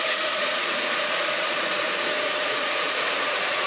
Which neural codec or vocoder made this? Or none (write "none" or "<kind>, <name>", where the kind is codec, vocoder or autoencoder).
vocoder, Vocos